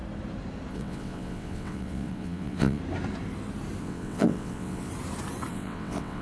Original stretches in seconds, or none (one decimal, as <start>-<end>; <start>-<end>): 0.0-0.7; 2.8-3.8; 4.9-5.5